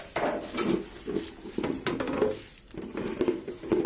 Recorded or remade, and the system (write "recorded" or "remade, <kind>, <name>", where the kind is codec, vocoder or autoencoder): recorded